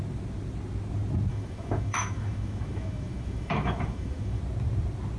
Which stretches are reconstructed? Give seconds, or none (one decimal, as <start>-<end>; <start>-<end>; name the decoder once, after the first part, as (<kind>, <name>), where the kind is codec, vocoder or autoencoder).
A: 1.3-4.4 (autoencoder, DAC-VAE)